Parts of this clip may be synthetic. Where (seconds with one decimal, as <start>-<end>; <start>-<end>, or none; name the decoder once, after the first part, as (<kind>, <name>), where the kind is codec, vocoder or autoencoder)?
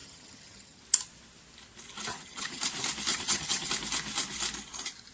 0.0-0.8 (vocoder, HiFi-GAN); 2.1-2.6; 3.1-3.7